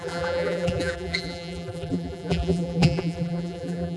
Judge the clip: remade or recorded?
remade